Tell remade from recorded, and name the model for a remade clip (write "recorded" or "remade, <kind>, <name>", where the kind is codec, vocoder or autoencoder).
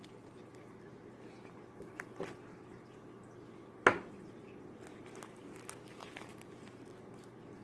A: recorded